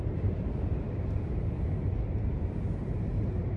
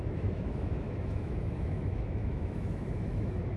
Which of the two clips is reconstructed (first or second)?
second